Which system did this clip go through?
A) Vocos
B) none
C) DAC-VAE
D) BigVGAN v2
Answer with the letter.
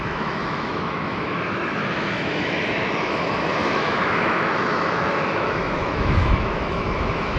C